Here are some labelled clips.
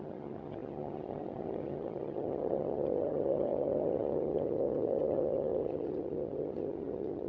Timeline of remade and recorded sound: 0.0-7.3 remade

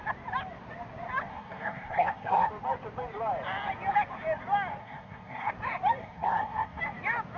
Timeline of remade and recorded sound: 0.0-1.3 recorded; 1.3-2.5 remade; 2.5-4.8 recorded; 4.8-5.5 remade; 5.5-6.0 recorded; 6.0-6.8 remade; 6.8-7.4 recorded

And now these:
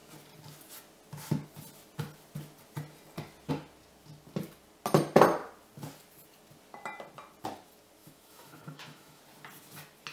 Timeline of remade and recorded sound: 0.0-8.0 recorded; 8.0-9.2 remade; 9.2-10.1 recorded

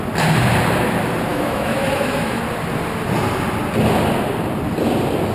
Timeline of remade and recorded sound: 0.0-1.3 recorded; 1.3-2.4 remade; 2.4-5.3 recorded